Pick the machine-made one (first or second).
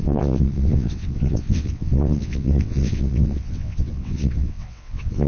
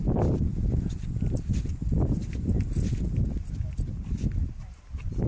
first